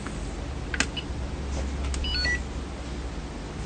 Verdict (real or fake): real